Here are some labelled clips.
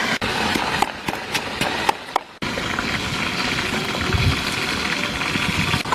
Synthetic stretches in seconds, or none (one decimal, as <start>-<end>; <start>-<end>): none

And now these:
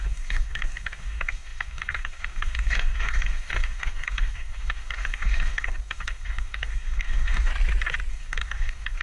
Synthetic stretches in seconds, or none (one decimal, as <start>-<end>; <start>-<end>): 0.0-7.5; 8.1-9.0

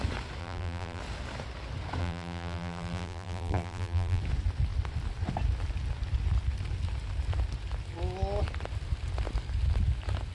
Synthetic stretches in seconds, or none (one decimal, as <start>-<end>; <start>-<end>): 0.4-1.0; 2.0-4.2

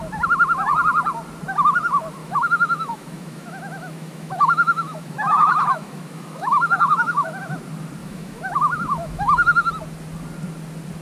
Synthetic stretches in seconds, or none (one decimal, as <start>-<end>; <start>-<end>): 2.2-7.4; 8.0-9.7

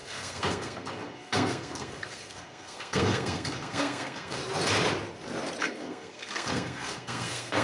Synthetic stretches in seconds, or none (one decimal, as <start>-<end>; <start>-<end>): 0.0-4.4; 5.6-7.6

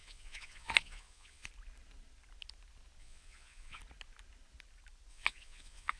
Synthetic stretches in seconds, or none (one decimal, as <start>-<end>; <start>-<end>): 0.0-1.5; 3.0-3.8; 5.1-6.0

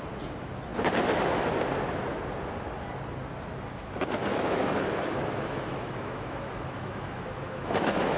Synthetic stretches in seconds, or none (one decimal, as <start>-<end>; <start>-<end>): 4.3-8.2

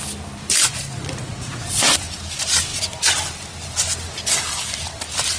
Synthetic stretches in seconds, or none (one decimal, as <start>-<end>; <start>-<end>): 1.2-2.2